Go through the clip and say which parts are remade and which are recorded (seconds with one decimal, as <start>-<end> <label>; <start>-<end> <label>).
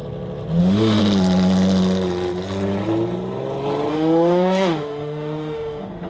0.0-0.6 recorded; 0.6-1.0 remade; 1.0-3.9 recorded; 3.9-6.1 remade